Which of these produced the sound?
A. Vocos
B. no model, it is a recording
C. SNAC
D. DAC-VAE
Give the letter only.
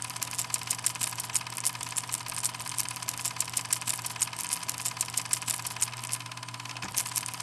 B